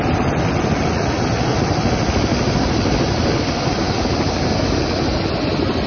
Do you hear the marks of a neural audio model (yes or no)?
no